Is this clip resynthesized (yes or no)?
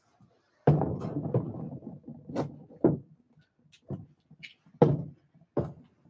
no